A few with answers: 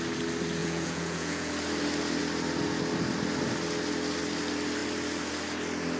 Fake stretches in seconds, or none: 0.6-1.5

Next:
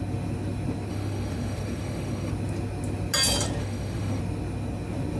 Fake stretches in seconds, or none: 0.9-2.3; 3.6-4.2